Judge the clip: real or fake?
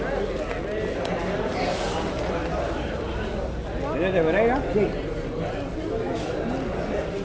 real